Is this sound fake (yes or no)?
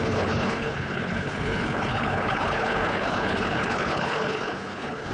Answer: yes